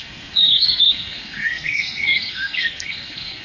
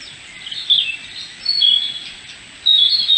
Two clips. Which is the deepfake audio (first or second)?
first